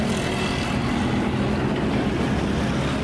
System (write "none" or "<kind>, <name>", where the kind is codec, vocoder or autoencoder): none